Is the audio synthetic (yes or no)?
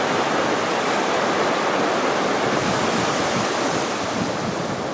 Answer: no